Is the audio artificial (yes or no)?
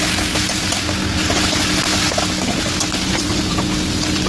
no